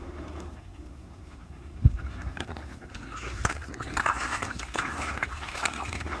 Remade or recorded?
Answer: remade